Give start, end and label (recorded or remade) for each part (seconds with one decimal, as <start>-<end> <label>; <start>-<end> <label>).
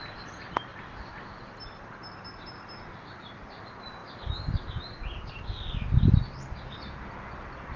0.0-7.8 recorded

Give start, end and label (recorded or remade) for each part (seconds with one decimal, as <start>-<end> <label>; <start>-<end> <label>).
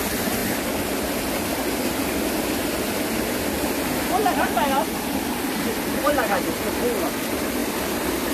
0.0-8.3 recorded